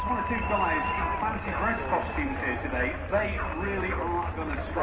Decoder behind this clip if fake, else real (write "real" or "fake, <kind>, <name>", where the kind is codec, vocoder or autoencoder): real